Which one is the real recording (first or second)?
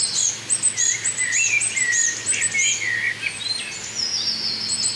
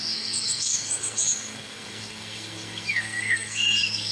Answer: first